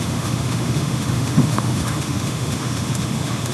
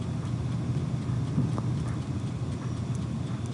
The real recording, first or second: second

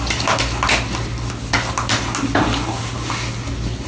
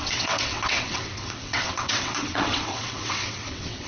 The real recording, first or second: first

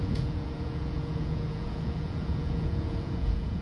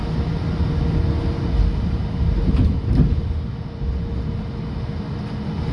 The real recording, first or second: second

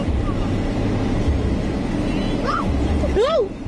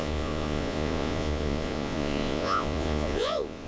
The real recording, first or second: first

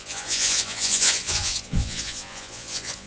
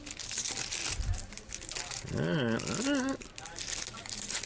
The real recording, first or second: second